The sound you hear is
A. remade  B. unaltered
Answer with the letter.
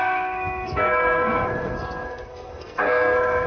A